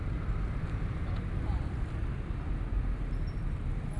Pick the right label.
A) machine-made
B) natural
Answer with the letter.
B